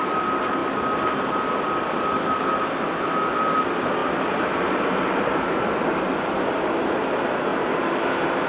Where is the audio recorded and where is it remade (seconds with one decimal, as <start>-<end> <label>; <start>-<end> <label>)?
0.0-8.5 recorded